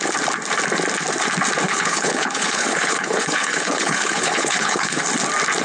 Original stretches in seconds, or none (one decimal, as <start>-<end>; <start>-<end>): 0.0-1.7; 5.1-5.6